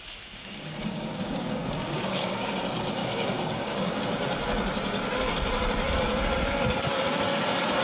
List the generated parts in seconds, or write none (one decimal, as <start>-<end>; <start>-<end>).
0.4-2.5; 3.0-4.0